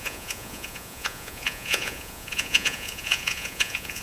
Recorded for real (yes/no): no